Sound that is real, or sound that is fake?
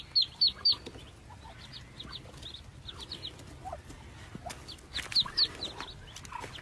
real